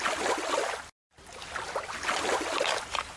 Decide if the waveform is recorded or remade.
recorded